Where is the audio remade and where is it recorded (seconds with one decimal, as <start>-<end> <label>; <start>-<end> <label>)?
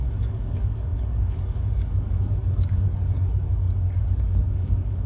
0.0-5.1 remade